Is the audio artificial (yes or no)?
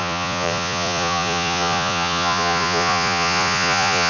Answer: yes